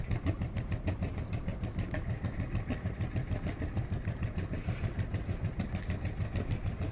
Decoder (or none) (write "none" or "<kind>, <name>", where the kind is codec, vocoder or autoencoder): none